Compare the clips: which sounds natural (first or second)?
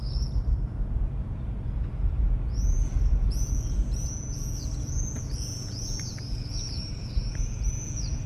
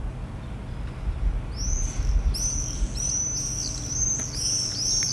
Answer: second